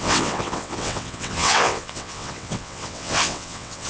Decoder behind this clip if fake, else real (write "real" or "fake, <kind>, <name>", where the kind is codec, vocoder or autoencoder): fake, vocoder, WaveNeXt